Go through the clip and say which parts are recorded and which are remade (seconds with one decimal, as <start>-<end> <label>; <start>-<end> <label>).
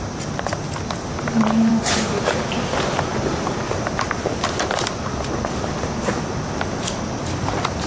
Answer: 0.0-1.7 recorded; 1.7-2.3 remade; 2.3-7.9 recorded